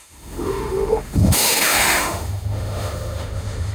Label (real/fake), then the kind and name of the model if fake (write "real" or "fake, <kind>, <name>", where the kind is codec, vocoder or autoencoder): fake, autoencoder, DAC-VAE